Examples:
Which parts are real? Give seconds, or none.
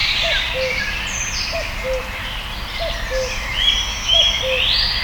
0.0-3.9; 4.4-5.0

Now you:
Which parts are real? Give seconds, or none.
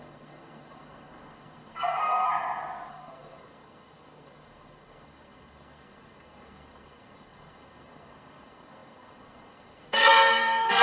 2.3-2.9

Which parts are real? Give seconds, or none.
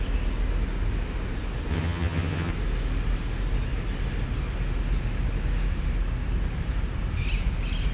0.0-1.7; 2.5-7.9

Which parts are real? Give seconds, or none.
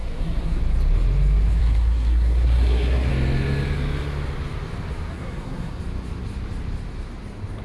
0.6-1.6; 3.1-5.1; 5.8-7.6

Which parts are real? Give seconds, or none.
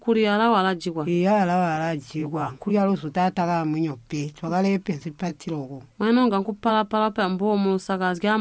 0.0-2.2; 2.7-8.4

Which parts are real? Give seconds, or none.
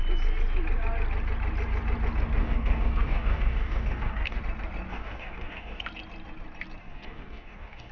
0.0-2.4; 4.4-4.9; 5.8-6.8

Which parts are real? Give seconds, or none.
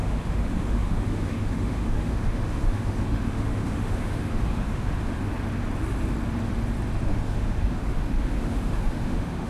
5.3-7.1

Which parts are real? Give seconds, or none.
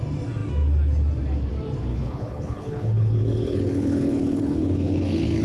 0.0-1.9